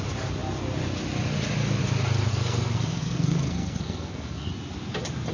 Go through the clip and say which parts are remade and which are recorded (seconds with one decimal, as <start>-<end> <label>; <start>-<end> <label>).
0.0-2.3 recorded; 2.3-4.5 remade; 4.5-5.3 recorded